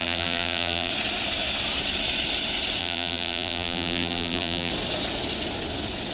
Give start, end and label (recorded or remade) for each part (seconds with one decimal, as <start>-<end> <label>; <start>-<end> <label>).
0.0-0.9 remade; 0.9-2.8 recorded; 2.8-4.7 remade; 4.7-6.1 recorded